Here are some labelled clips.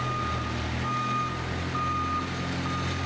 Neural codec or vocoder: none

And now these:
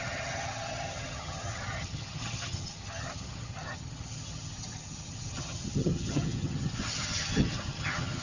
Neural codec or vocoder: vocoder, HiFi-GAN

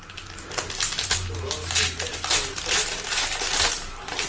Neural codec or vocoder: none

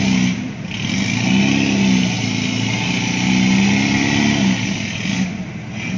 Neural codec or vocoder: none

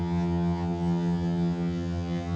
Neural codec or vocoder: vocoder, HiFi-GAN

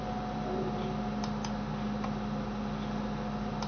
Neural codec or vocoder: none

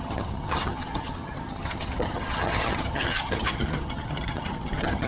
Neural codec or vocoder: vocoder, HiFi-GAN